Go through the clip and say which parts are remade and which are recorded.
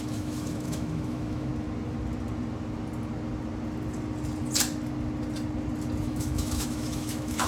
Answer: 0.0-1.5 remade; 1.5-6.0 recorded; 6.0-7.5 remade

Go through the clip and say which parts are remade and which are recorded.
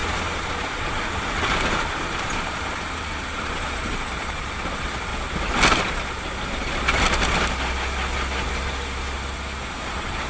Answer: 0.0-2.3 recorded; 2.3-5.1 remade; 5.1-9.7 recorded; 9.7-10.3 remade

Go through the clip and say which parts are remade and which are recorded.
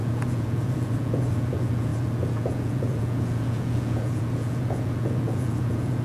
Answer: 0.0-6.0 remade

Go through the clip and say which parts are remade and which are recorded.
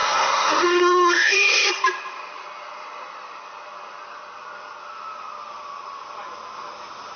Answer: 0.0-1.7 remade; 1.7-7.2 recorded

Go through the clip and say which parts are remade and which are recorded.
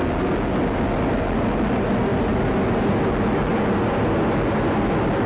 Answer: 0.0-5.3 recorded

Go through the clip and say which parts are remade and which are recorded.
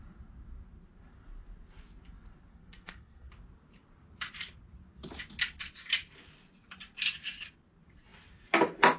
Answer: 0.0-2.5 recorded; 2.5-3.3 remade; 3.3-9.0 recorded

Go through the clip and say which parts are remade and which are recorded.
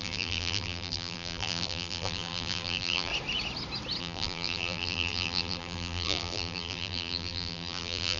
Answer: 0.0-3.1 remade; 3.1-4.0 recorded; 4.0-8.2 remade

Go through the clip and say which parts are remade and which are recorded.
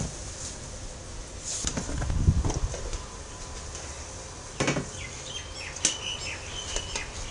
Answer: 0.0-7.3 recorded